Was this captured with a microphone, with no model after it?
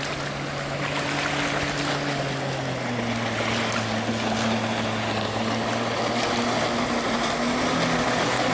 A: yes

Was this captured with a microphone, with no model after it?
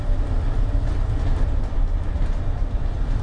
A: yes